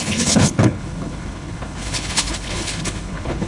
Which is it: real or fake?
fake